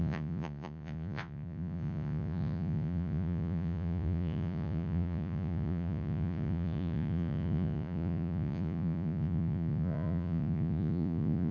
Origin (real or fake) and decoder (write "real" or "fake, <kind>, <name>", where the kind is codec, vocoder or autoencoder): fake, vocoder, Vocos